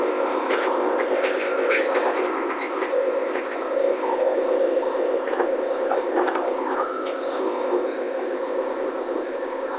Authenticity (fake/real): fake